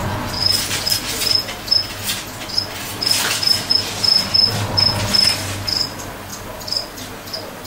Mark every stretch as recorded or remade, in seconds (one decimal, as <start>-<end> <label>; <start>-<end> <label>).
0.0-7.7 recorded